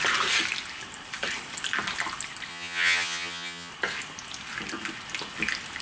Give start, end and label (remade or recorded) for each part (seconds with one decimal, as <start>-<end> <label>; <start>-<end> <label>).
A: 0.0-2.5 recorded; 2.5-3.7 remade; 3.7-5.8 recorded